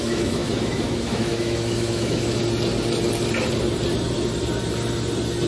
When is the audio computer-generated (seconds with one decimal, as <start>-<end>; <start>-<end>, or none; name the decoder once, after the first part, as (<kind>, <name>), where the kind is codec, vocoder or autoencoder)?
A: 0.0-2.4 (autoencoder, DAC-VAE)